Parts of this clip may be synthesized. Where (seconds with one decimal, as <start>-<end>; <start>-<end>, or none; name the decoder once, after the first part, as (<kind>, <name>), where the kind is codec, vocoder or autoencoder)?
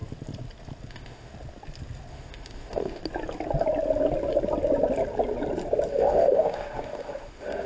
0.9-1.3 (autoencoder, DAC-VAE); 2.1-3.0; 5.9-7.7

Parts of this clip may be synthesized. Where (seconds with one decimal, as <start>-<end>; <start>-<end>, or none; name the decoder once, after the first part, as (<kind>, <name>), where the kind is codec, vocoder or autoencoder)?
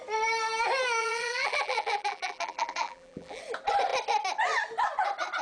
1.0-3.4 (vocoder, BigVGAN v2)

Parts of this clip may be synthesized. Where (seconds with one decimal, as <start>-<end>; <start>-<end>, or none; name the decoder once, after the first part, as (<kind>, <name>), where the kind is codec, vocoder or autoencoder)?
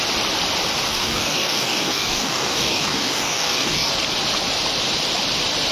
0.9-3.9 (codec, DAC)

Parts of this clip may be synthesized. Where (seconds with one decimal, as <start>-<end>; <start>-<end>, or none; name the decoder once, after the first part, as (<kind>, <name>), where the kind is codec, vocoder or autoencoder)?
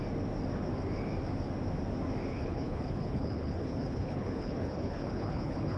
2.3-5.8 (codec, HILCodec)